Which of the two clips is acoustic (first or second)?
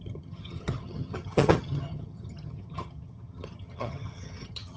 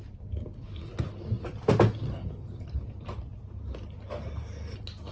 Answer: second